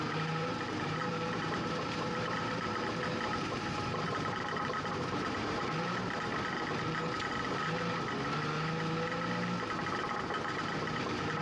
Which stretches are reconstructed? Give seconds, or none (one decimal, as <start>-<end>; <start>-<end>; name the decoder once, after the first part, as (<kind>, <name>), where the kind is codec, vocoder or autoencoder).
0.0-6.3 (vocoder, BigVGAN v2); 10.8-11.4